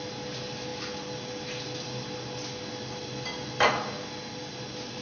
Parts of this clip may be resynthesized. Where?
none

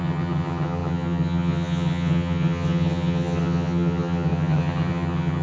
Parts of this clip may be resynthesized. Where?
0.0-5.4 (vocoder, HiFi-GAN)

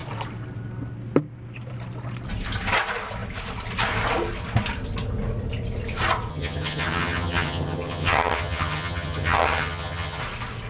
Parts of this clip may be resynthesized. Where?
6.3-10.2 (vocoder, HiFi-GAN)